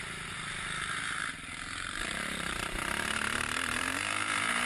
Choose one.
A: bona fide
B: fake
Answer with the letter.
B